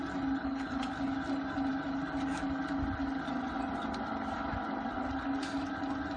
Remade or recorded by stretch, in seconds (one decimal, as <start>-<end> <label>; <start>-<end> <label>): 0.0-0.4 recorded; 0.4-0.9 remade; 0.9-6.2 recorded